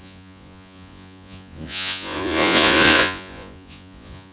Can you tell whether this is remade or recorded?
remade